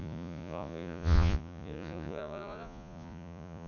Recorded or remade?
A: remade